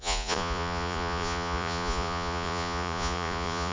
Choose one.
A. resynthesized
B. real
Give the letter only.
A